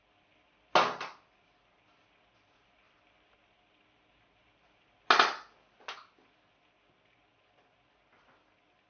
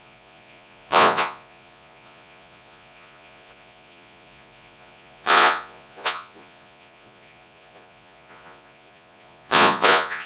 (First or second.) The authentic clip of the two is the first